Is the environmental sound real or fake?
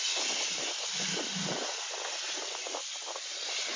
real